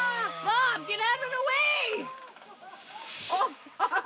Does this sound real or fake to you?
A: fake